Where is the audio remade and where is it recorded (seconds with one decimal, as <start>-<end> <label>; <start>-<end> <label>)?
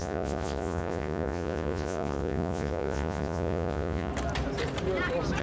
0.0-4.1 remade; 4.1-5.4 recorded